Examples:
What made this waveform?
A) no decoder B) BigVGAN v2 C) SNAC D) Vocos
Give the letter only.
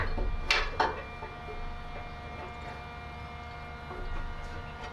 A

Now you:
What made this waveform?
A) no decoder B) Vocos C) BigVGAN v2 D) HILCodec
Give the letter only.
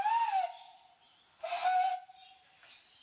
A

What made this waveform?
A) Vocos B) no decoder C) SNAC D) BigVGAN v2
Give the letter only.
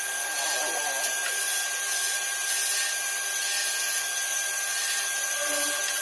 B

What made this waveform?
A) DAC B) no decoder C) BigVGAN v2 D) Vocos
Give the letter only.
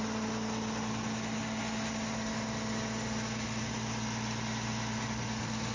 B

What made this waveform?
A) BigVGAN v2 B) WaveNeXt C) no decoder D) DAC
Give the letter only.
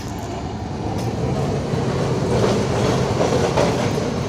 C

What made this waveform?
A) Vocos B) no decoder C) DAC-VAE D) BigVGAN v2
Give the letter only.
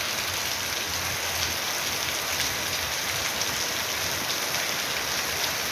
B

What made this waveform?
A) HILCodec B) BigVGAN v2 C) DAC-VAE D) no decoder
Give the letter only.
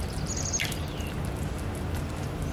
D